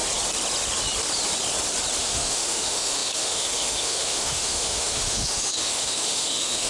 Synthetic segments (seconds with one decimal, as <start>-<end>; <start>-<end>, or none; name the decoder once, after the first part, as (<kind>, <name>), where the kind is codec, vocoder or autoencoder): 2.0-6.7 (autoencoder, DAC-VAE)